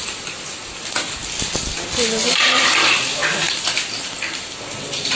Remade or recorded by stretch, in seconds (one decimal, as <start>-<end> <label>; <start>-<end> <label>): 0.0-5.2 recorded